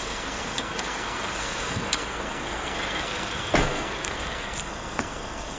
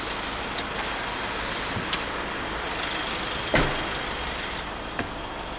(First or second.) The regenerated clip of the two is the first